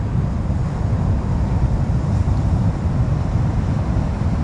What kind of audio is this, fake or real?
real